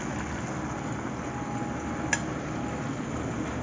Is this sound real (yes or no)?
yes